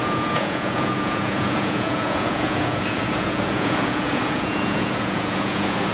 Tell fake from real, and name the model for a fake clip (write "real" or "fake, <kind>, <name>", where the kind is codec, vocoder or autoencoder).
fake, vocoder, Vocos